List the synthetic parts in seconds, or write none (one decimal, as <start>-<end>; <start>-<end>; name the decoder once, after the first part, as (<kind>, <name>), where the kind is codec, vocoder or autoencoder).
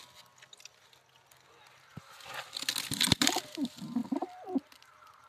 none